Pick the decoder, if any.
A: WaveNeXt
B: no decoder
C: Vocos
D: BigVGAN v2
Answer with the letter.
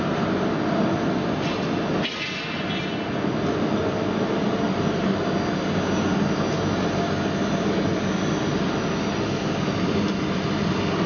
B